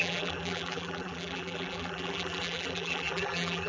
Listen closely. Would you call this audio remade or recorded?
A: remade